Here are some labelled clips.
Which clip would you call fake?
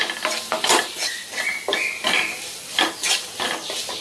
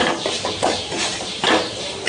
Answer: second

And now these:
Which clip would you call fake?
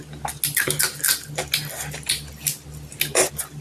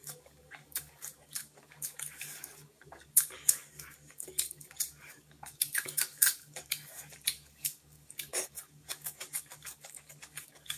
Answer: second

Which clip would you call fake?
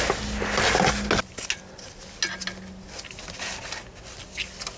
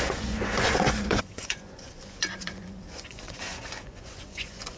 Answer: second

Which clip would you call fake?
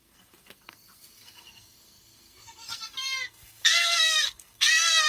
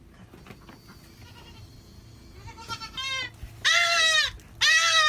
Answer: first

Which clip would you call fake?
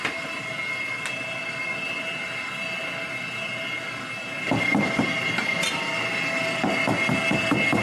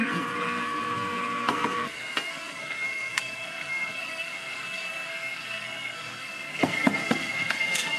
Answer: second